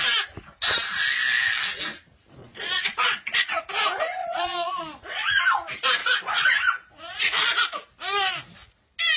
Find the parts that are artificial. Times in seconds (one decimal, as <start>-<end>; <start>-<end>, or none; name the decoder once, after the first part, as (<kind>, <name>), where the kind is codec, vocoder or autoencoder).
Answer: 2.4-3.6 (vocoder, Vocos); 4.2-5.4; 6.0-6.5